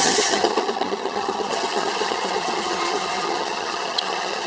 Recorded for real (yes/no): no